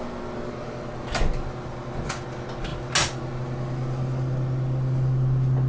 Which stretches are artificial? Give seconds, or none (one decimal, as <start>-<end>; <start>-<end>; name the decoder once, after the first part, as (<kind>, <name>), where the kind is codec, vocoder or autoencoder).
none